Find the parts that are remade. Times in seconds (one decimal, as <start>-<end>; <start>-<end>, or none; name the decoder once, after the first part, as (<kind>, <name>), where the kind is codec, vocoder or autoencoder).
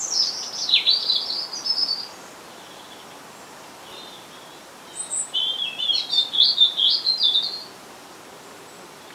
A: none